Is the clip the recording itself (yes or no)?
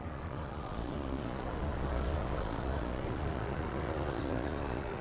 no